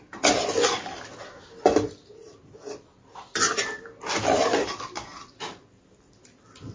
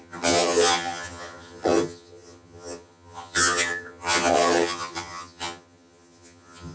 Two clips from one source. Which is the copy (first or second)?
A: second